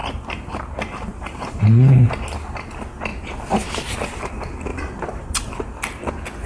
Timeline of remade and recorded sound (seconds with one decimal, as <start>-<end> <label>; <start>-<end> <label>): 0.0-1.6 remade; 1.6-3.1 recorded; 3.1-4.3 remade; 4.3-4.7 recorded; 4.7-6.1 remade; 6.1-6.5 recorded